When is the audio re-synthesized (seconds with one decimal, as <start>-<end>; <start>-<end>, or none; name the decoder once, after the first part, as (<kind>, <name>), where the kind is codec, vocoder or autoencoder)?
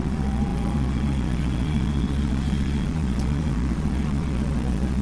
0.0-5.0 (vocoder, Vocos)